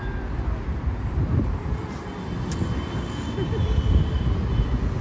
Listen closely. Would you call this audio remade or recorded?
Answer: recorded